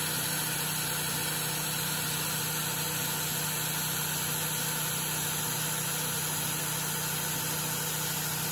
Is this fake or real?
real